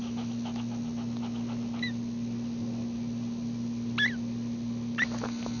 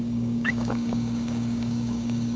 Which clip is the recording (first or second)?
first